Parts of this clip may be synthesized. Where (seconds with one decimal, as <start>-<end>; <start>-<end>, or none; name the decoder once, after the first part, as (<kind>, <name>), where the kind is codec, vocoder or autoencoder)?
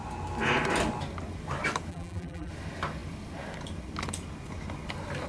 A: 1.9-2.5 (vocoder, BigVGAN v2)